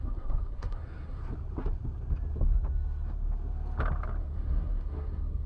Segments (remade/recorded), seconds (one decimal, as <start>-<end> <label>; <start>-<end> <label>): 0.0-1.2 remade; 1.2-4.2 recorded; 4.2-5.5 remade